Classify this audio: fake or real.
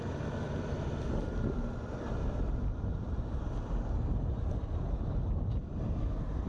real